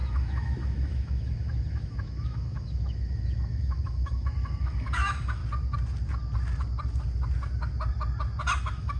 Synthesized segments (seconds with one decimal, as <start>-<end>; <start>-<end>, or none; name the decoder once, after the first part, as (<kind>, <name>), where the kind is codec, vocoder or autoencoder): 0.0-5.4 (autoencoder, DAC-VAE); 8.6-9.0